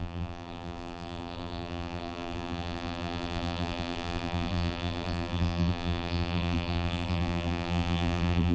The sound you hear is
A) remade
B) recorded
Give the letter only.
A